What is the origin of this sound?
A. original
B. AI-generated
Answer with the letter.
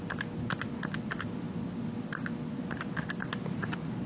A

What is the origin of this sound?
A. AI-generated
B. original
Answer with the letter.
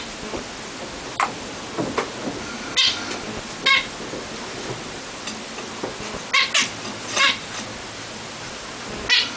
B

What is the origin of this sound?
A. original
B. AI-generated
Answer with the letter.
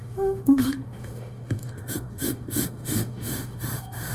B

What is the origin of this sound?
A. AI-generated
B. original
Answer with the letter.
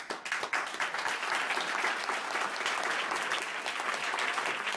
B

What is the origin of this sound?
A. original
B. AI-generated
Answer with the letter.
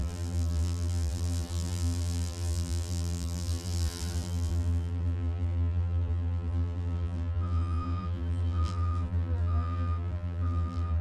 B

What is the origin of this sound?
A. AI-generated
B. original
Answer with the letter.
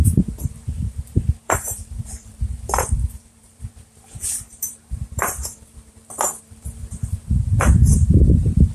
A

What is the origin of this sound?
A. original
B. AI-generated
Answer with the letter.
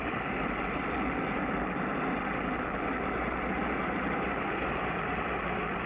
A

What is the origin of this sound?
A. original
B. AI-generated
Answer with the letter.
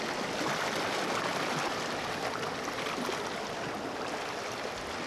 A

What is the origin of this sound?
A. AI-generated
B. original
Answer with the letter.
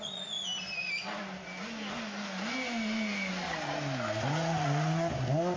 B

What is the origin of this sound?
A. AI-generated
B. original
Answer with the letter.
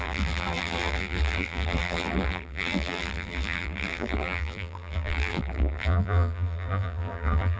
A